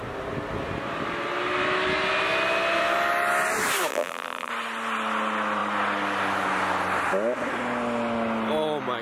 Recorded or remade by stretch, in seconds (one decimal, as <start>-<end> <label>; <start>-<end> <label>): 0.0-3.9 recorded; 3.9-4.5 remade; 4.5-9.0 recorded